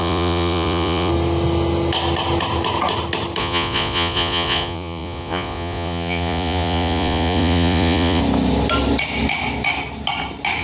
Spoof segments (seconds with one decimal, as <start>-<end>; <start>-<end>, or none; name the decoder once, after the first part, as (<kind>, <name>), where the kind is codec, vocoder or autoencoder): 0.0-1.1 (vocoder, Vocos); 3.4-8.2